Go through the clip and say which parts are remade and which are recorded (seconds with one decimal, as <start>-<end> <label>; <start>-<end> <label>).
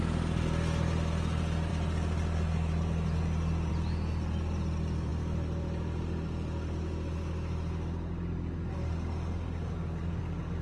0.0-10.6 recorded